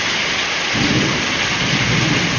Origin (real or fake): real